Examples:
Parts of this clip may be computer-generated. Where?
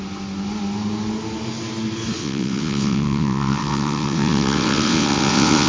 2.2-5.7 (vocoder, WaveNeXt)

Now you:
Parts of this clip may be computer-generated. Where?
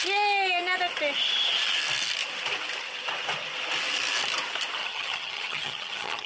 4.8-6.3 (vocoder, HiFi-GAN)